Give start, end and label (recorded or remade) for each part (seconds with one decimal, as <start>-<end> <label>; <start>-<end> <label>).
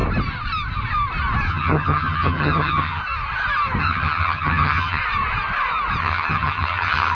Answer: 0.0-1.5 recorded; 1.5-3.0 remade; 3.0-3.8 recorded; 3.8-5.0 remade; 5.0-6.0 recorded; 6.0-7.1 remade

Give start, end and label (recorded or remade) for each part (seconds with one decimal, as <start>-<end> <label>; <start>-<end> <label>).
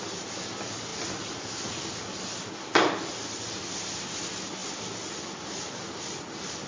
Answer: 0.0-6.7 recorded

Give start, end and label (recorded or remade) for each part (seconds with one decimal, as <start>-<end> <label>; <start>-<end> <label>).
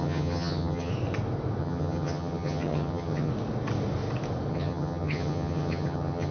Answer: 0.0-0.9 remade; 0.9-1.6 recorded; 1.6-3.3 remade; 3.3-4.5 recorded; 4.5-6.3 remade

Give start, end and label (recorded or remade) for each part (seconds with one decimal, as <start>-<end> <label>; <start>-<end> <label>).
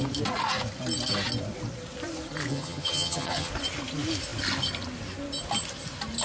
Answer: 0.0-2.5 recorded; 2.5-3.5 remade; 3.5-6.2 recorded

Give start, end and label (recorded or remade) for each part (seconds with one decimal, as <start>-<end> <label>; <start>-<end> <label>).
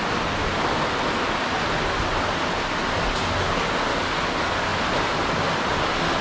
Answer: 0.0-6.2 recorded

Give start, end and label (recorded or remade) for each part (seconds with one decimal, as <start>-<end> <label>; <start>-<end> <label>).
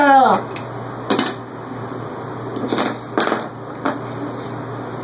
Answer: 0.0-5.0 recorded